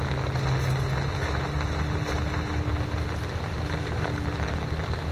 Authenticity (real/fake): real